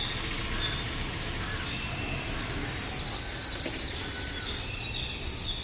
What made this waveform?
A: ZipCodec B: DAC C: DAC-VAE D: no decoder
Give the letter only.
D